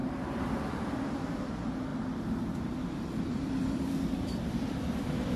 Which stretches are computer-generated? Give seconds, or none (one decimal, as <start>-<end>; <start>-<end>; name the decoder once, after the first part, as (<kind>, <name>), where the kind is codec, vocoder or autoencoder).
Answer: 1.9-5.4 (vocoder, BigVGAN v2)